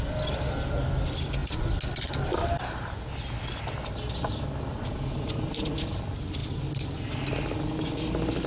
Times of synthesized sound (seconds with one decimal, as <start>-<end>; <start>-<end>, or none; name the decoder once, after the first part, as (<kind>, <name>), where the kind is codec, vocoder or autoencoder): none

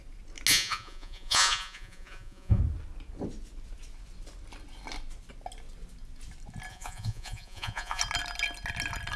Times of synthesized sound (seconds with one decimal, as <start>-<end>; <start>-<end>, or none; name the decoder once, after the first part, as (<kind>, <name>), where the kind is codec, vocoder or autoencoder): 0.5-2.6 (vocoder, Vocos); 6.7-8.0

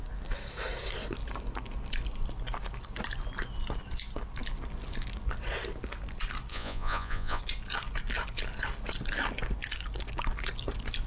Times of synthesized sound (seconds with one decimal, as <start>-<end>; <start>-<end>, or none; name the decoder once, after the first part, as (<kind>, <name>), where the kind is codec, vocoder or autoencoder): 6.5-7.4 (vocoder, Vocos)

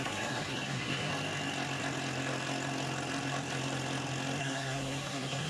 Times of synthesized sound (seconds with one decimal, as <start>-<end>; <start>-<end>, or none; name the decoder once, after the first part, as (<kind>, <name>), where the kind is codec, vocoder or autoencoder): 0.0-1.1 (codec, SNAC); 4.4-5.5

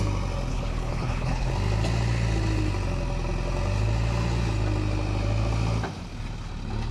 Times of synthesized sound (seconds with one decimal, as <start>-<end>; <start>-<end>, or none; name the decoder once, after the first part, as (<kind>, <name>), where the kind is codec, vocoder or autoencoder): 0.5-1.5 (codec, HILCodec)